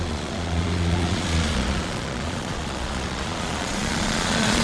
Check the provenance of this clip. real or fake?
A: fake